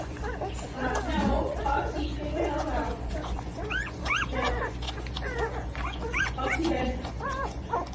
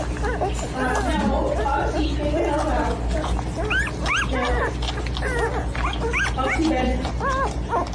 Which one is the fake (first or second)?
first